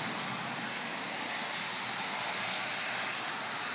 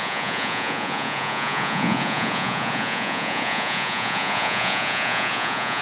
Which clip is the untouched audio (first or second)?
first